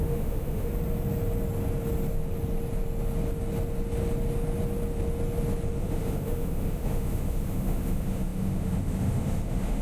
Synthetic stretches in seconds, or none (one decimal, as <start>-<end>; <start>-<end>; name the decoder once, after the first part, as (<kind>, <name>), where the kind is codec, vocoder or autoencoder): 0.0-0.7 (autoencoder, DAC-VAE); 5.8-9.8